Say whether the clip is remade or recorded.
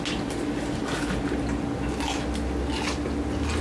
recorded